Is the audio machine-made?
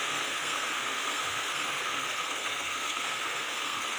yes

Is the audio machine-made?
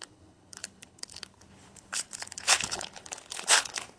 yes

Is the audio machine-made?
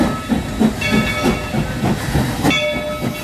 no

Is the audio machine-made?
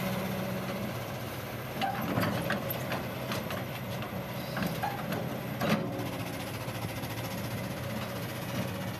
no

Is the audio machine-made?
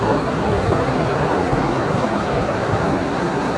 yes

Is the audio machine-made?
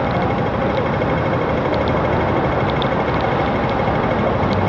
no